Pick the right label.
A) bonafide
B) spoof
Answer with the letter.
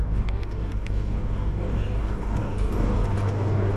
B